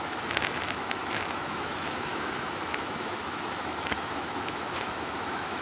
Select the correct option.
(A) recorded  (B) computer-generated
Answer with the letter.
B